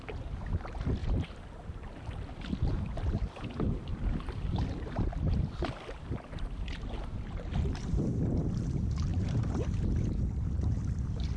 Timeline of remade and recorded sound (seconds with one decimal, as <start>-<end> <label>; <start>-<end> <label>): 0.0-1.0 recorded; 1.0-2.1 remade; 2.1-9.1 recorded; 9.1-9.8 remade; 9.8-11.4 recorded